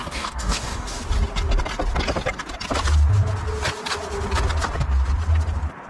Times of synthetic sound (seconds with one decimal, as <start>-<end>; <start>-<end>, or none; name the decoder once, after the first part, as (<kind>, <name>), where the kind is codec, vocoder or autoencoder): 0.0-1.0 (codec, DAC)